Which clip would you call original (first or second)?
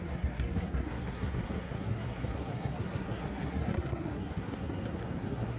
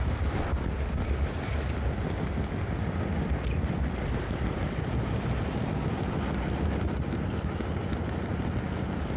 second